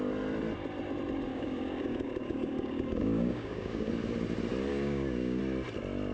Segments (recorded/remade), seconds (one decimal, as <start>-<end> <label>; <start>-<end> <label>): 0.0-1.3 recorded; 1.3-3.9 remade; 3.9-4.7 recorded; 4.7-5.4 remade; 5.4-6.1 recorded